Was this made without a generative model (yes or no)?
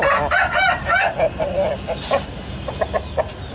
yes